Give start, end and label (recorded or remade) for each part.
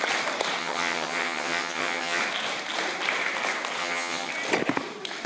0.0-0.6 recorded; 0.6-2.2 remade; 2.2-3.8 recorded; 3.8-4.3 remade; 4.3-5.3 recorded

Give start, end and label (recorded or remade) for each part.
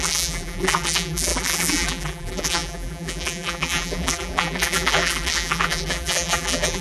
0.0-6.8 remade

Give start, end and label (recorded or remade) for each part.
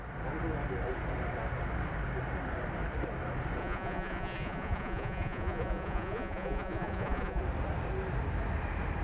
0.0-3.6 recorded; 3.6-7.4 remade; 7.4-9.0 recorded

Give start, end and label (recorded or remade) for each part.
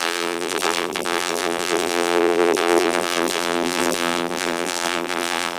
0.0-5.6 remade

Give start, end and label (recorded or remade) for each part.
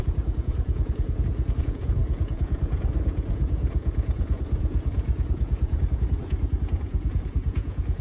0.0-8.0 remade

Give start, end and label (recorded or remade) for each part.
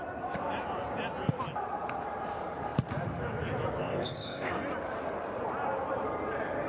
0.0-3.8 recorded; 3.8-4.5 remade; 4.5-6.7 recorded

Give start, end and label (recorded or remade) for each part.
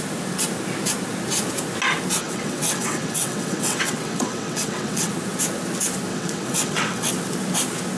0.0-2.2 recorded; 2.2-5.1 remade; 5.1-6.1 recorded; 6.1-7.1 remade; 7.1-8.0 recorded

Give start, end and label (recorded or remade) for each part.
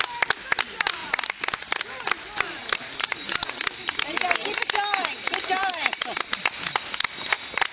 0.0-7.7 recorded